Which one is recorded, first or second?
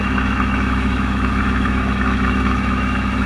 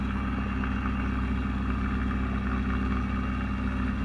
second